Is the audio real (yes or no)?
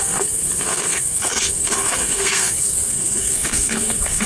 no